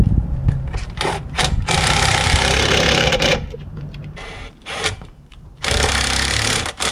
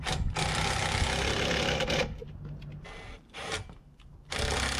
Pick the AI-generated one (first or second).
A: first